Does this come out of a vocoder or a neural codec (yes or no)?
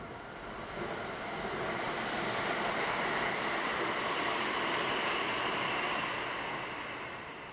yes